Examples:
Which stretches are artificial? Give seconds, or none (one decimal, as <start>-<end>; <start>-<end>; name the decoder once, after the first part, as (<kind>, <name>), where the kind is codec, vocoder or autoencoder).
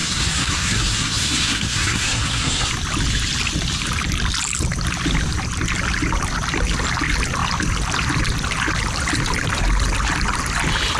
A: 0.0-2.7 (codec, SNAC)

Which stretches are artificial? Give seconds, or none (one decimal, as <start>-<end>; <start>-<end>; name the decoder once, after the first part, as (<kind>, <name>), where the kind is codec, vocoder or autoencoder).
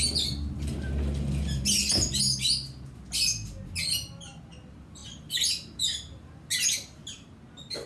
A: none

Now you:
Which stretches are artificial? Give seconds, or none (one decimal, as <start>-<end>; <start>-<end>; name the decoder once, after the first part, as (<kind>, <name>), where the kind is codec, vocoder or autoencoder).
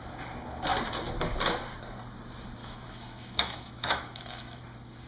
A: 2.6-4.6 (autoencoder, DAC-VAE)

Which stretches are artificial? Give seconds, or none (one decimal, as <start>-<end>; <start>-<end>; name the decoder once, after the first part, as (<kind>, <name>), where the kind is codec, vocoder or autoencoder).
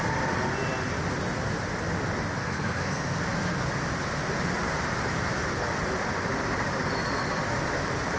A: 2.4-3.2 (codec, SNAC)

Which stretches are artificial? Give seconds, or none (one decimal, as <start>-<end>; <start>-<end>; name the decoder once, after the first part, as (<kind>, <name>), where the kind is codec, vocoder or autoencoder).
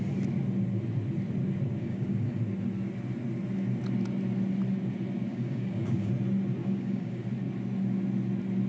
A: 1.8-2.4 (codec, DAC); 5.3-6.1; 6.6-7.2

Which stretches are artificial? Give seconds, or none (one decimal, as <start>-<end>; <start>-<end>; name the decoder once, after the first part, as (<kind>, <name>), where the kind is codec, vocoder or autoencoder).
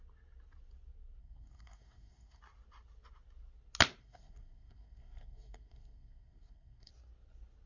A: 1.2-2.4 (codec, SNAC); 4.0-6.9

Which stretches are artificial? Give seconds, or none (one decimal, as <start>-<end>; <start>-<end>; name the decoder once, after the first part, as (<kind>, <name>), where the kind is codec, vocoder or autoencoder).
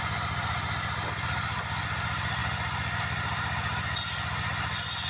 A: none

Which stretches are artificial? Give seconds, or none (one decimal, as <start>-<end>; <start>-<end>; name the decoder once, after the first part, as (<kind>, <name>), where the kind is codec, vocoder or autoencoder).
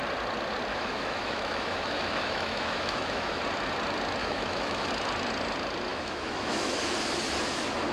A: 0.7-3.4 (autoencoder, DAC-VAE); 4.2-4.9; 5.9-6.8